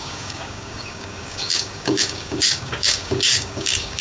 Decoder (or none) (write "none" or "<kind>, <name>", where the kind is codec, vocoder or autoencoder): codec, DAC